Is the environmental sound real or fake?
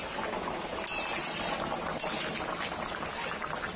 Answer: real